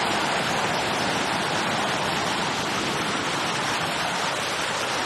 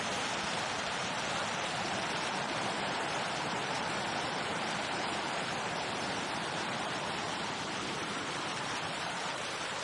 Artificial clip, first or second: second